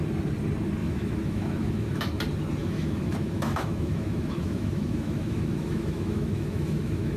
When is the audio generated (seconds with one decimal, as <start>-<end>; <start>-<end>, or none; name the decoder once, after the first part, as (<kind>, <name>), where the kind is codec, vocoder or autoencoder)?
0.8-2.1 (autoencoder, DAC-VAE); 2.6-7.2